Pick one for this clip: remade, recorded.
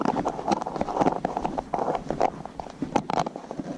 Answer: recorded